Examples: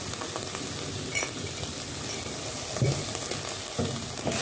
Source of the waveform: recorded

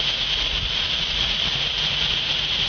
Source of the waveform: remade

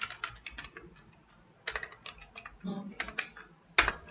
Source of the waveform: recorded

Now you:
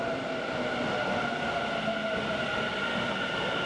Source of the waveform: recorded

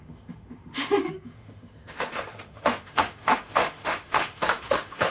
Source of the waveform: remade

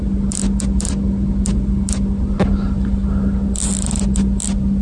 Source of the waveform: recorded